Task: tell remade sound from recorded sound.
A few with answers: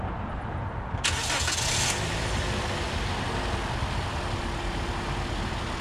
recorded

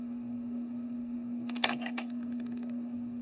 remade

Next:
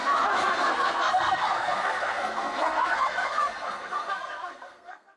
remade